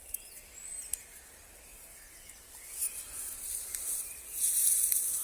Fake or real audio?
real